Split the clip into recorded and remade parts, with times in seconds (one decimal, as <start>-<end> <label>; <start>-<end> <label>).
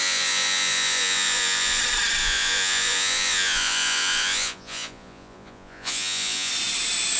0.0-1.8 remade; 1.8-2.2 recorded; 2.2-6.5 remade; 6.5-7.2 recorded